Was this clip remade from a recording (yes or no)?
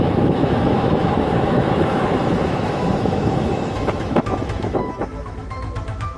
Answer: yes